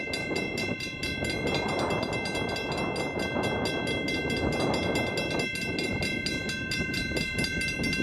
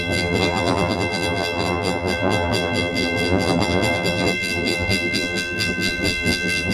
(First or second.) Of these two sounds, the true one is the first